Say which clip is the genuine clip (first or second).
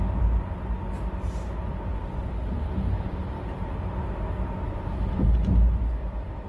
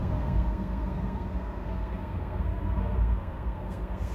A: first